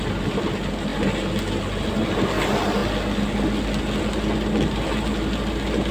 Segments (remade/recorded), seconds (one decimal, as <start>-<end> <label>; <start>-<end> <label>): 0.0-5.9 recorded